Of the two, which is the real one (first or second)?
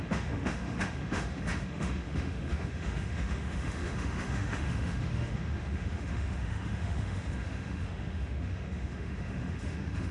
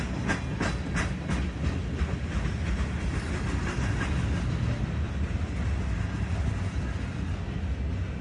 second